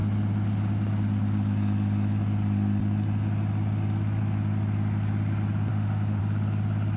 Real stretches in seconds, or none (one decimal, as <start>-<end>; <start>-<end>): 0.0-5.7; 6.2-7.0